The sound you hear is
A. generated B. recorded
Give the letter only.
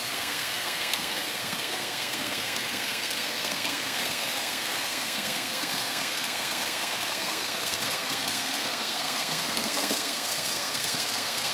A